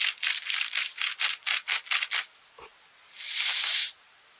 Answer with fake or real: real